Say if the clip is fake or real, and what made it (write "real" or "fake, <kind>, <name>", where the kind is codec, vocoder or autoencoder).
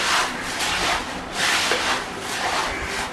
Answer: real